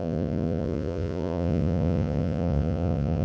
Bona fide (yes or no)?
no